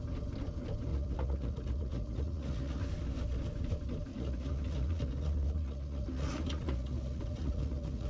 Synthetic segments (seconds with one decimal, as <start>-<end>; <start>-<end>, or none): 0.9-2.8; 4.1-8.1